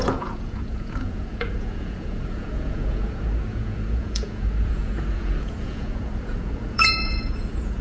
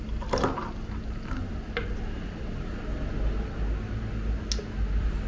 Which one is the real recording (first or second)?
second